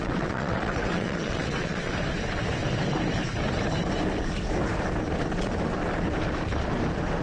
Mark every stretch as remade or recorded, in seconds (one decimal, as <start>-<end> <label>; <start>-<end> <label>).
0.0-1.9 remade; 1.9-7.2 recorded